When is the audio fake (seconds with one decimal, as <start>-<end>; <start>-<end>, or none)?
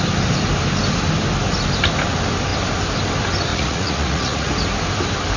3.5-4.5